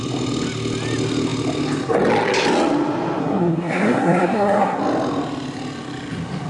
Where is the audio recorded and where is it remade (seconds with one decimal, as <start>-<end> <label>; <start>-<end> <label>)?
0.0-3.2 recorded; 3.2-4.8 remade; 4.8-6.5 recorded